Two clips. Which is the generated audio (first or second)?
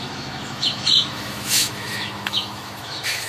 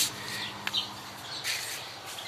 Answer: first